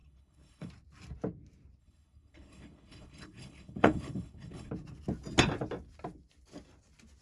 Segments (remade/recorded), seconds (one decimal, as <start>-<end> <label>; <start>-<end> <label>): 0.0-0.7 remade; 0.7-1.8 recorded; 1.8-4.7 remade; 4.7-7.2 recorded

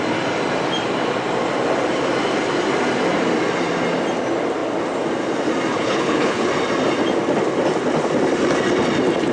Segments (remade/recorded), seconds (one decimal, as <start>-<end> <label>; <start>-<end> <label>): 0.0-5.7 recorded; 5.7-6.5 remade; 6.5-9.3 recorded